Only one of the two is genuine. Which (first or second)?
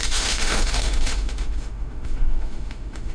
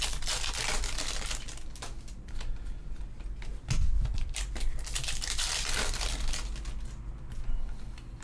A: second